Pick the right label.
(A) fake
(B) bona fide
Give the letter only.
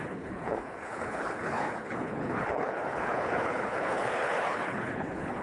A